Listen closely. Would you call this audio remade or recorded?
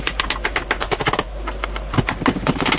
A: recorded